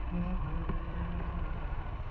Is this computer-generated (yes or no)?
yes